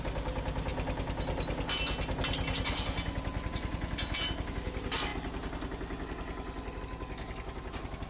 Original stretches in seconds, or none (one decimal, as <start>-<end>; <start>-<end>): 0.0-8.1